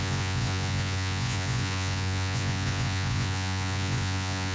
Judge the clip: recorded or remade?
remade